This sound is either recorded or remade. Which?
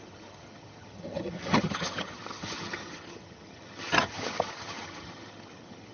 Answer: remade